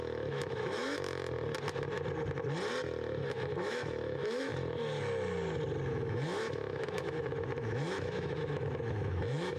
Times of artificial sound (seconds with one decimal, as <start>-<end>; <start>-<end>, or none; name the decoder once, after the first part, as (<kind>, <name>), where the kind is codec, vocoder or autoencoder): 0.0-1.2 (autoencoder, DAC-VAE); 3.3-4.5; 5.9-9.6